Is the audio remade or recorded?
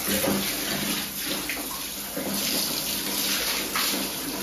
recorded